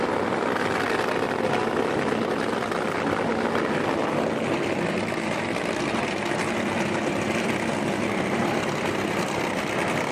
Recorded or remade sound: recorded